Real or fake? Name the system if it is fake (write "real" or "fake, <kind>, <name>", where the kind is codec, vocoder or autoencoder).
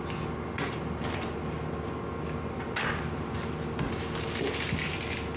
real